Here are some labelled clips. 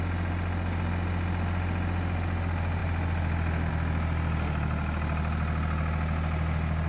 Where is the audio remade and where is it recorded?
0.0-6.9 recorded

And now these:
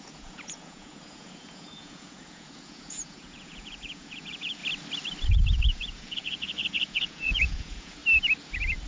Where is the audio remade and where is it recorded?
0.0-4.6 remade; 4.6-5.3 recorded; 5.3-8.0 remade; 8.0-8.9 recorded

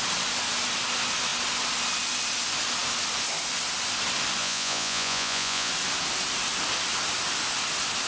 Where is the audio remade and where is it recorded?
0.0-4.4 recorded; 4.4-5.7 remade; 5.7-8.1 recorded

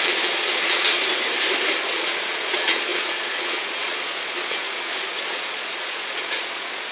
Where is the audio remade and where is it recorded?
0.0-1.0 remade; 1.0-1.9 recorded; 1.9-6.9 remade

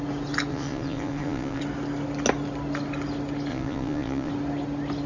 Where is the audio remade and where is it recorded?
0.0-0.5 recorded; 0.5-1.6 remade; 1.6-3.5 recorded; 3.5-4.3 remade; 4.3-5.1 recorded